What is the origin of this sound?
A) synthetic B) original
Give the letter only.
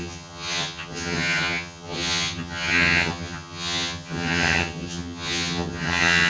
A